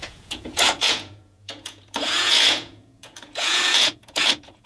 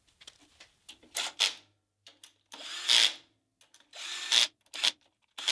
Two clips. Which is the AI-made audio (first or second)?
first